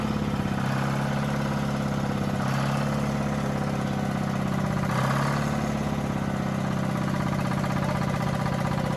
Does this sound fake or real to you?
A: real